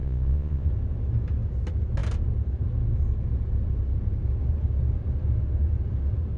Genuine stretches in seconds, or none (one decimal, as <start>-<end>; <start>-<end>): 0.7-6.4